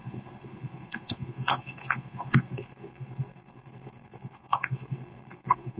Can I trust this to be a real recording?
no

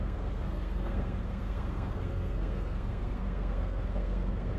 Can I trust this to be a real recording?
no